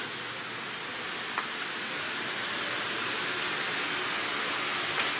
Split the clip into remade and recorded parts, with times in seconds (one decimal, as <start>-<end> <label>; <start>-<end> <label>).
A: 0.0-0.9 recorded; 0.9-3.4 remade; 3.4-5.2 recorded